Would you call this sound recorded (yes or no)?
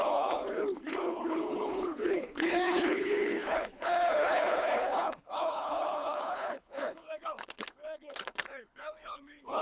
no